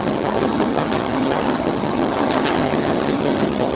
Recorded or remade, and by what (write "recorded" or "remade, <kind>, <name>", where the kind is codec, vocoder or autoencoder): remade, vocoder, HiFi-GAN